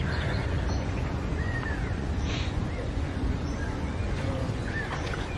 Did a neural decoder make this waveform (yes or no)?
yes